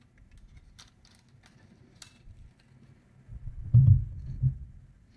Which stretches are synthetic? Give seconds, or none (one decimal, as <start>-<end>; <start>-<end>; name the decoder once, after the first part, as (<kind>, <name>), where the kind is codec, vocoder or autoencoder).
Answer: 3.3-3.8 (vocoder, Vocos)